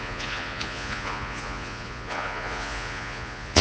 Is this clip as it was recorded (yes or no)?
no